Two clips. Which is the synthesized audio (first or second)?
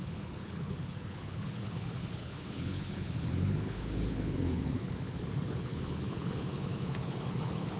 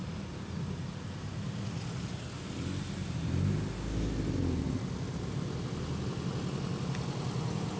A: first